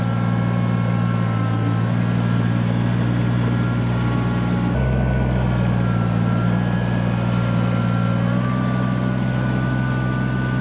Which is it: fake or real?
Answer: real